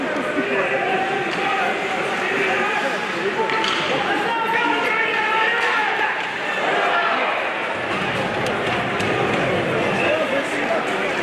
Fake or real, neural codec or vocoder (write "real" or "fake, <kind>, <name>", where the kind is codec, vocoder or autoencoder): real